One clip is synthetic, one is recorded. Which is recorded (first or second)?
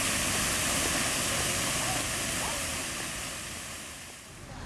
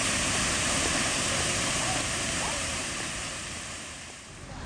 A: first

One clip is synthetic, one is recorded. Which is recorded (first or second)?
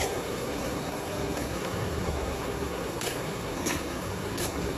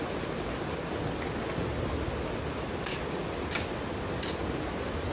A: second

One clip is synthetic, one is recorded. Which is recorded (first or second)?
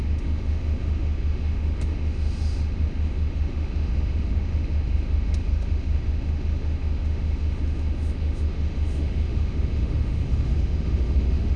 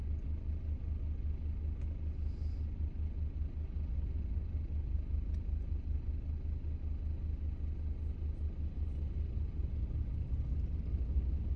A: second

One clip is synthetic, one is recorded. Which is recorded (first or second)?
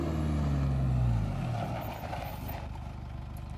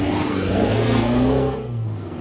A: first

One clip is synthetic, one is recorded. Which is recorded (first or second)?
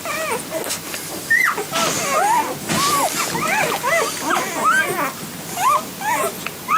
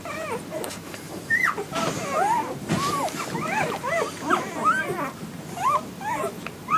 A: first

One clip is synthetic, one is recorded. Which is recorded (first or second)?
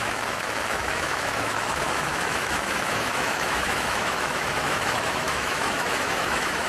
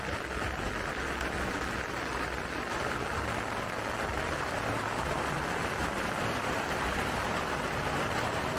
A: second